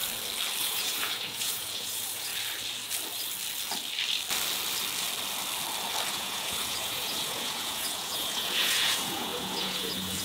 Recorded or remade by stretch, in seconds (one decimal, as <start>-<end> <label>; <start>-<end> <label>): 0.0-0.6 recorded; 0.6-2.3 remade; 2.3-6.1 recorded; 6.1-10.2 remade